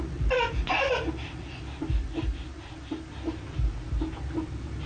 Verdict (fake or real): real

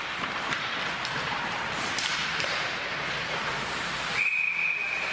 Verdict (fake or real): fake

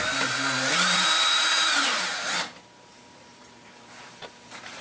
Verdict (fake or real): fake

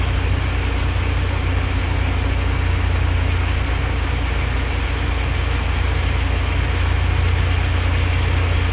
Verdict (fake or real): real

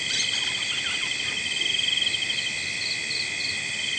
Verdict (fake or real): real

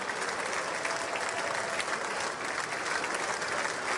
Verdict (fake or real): real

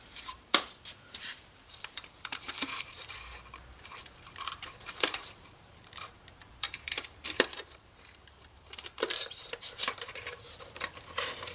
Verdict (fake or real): fake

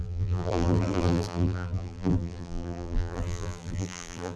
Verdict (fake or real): fake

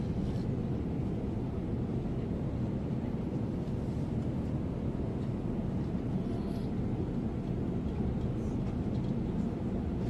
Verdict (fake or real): real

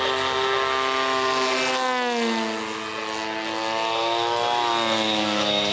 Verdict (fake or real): real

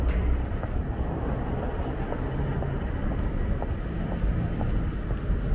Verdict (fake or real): real